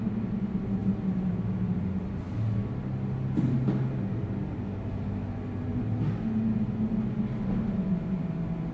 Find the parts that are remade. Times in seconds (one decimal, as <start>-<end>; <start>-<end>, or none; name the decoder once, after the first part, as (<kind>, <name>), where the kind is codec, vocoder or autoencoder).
none